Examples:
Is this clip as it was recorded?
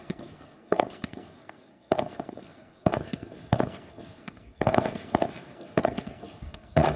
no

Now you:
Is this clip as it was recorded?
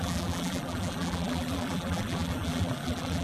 no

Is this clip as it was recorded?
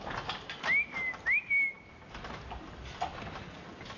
yes